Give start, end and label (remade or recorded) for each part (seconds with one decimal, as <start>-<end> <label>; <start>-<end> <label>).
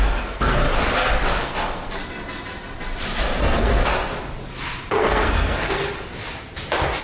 0.0-0.6 remade; 0.6-1.4 recorded; 1.4-2.0 remade; 2.0-3.4 recorded; 3.4-3.8 remade; 3.8-4.9 recorded; 4.9-5.8 remade; 5.8-7.0 recorded